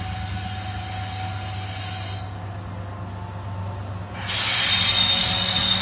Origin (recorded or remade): recorded